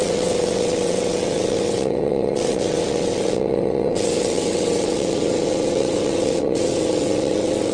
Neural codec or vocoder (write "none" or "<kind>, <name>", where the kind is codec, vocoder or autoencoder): vocoder, WaveNeXt